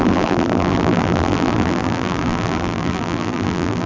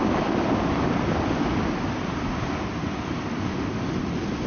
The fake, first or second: first